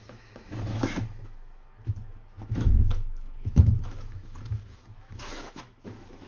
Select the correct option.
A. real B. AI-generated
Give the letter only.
B